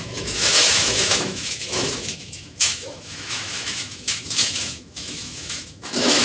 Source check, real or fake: fake